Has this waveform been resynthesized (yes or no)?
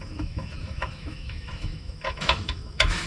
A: yes